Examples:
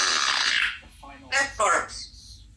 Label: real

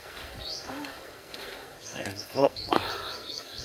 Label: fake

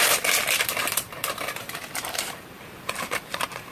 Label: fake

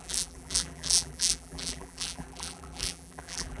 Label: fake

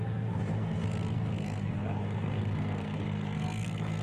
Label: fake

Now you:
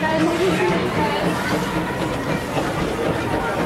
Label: fake